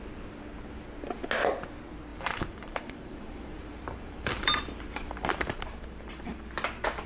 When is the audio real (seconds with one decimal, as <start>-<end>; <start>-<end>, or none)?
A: 0.0-2.1; 6.4-7.1